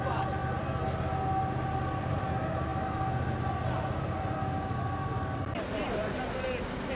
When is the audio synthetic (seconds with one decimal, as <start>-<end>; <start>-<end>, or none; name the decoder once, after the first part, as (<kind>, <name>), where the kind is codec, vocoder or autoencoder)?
none